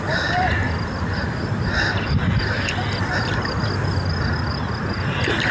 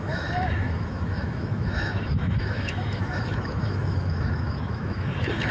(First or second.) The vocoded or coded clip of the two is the second